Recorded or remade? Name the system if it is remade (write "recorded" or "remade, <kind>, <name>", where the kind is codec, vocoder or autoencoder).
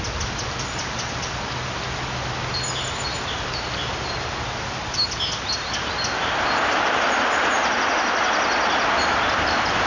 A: recorded